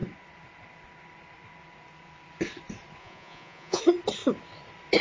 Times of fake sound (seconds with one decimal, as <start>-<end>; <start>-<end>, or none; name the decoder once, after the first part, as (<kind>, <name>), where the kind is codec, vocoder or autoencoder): 3.0-3.8 (vocoder, Vocos)